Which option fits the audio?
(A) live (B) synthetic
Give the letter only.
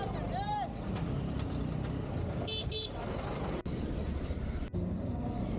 A